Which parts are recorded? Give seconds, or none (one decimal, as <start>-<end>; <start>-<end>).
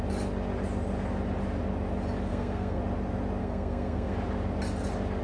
0.0-2.3; 2.8-3.4; 4.1-5.2